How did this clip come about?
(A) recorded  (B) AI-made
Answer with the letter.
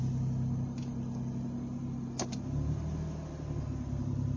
A